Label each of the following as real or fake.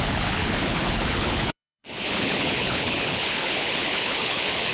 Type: fake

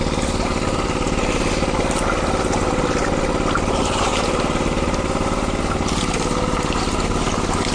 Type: real